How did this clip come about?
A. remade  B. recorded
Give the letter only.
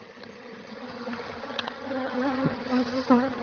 A